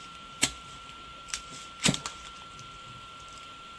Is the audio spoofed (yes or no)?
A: no